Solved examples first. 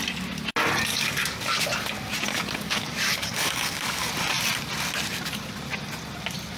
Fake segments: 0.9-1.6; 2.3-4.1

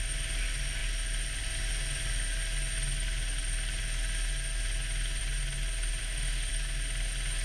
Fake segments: 6.0-6.5